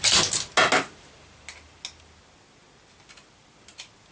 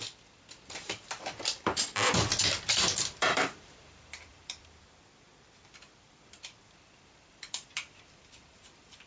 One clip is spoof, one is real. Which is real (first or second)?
first